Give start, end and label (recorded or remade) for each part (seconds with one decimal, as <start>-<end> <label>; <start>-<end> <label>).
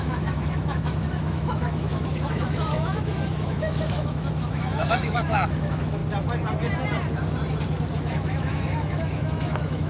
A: 0.0-6.0 remade; 6.0-7.9 recorded; 7.9-9.9 remade